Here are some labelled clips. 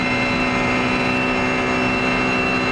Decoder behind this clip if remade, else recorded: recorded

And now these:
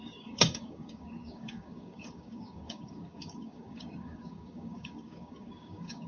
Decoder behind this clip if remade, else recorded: remade, codec, DAC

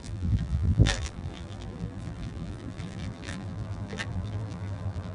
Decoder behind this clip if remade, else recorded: remade, vocoder, BigVGAN v2